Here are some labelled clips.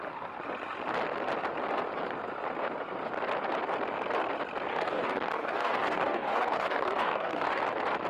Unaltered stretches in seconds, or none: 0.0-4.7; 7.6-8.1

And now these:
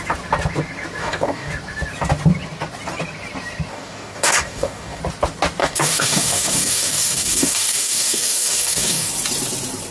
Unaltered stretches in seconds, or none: 0.0-1.0; 1.5-3.7; 5.0-5.6; 9.1-9.9

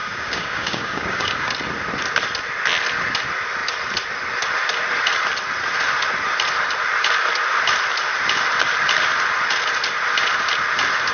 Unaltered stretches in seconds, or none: 1.5-11.1

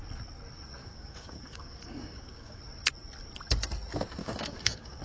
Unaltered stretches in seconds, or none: 0.0-0.8; 2.6-4.2